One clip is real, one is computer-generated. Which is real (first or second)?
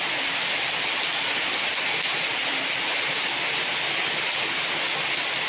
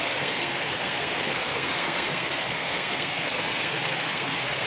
first